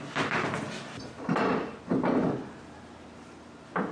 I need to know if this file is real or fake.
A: real